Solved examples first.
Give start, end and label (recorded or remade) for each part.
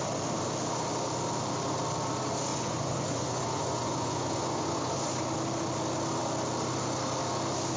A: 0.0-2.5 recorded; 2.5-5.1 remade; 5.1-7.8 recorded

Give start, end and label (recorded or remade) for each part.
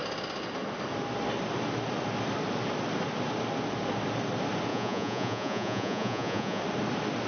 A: 0.0-4.7 recorded; 4.7-6.6 remade; 6.6-7.3 recorded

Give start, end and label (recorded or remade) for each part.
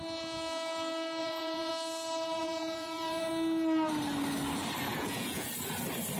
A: 0.0-1.2 recorded; 1.2-1.7 remade; 1.7-2.4 recorded; 2.4-3.3 remade; 3.3-4.9 recorded; 4.9-5.5 remade; 5.5-6.2 recorded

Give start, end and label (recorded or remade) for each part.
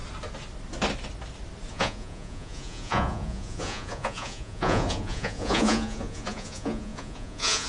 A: 0.0-1.7 recorded; 1.7-7.7 remade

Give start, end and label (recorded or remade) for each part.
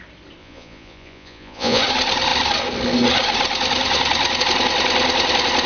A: 0.0-0.4 recorded; 0.4-1.8 remade; 1.8-5.7 recorded